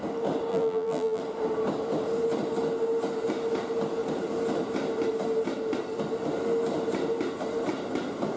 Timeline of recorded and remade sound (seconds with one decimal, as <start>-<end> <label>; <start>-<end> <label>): 0.0-0.5 recorded; 0.5-1.2 remade; 1.2-8.4 recorded